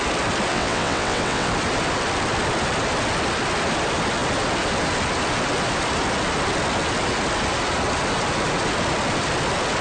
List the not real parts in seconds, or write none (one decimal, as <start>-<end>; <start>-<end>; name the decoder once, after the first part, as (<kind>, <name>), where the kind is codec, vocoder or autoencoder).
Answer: 0.5-1.5 (vocoder, WaveNeXt)